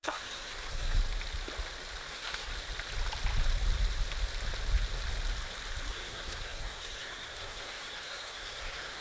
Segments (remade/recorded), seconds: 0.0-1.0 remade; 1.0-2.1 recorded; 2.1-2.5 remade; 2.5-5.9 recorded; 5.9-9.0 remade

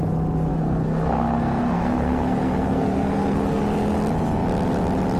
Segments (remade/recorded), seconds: 0.0-0.5 recorded; 0.5-3.6 remade; 3.6-5.2 recorded

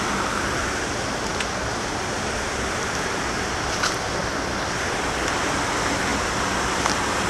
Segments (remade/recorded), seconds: 0.0-7.3 recorded

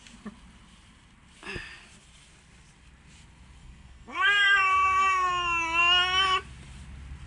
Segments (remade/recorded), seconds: 0.0-3.6 recorded; 3.6-5.3 remade; 5.3-7.3 recorded

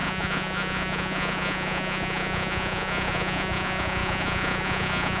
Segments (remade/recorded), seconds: 0.0-5.2 remade